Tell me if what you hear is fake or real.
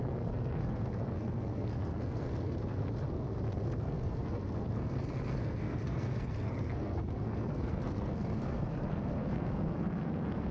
fake